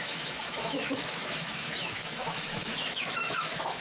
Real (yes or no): no